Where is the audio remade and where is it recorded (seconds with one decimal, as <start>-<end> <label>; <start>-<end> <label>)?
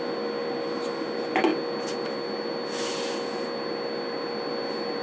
0.0-5.0 recorded